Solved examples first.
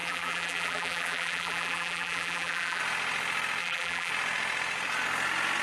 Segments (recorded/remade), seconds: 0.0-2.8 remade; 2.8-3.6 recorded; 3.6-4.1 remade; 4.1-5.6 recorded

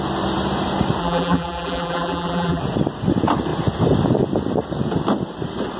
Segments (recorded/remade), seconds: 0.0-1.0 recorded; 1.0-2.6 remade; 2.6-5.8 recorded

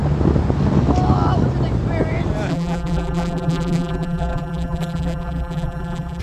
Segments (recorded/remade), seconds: 0.0-2.5 recorded; 2.5-6.2 remade